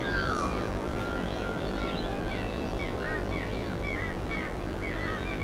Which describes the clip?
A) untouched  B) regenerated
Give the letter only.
B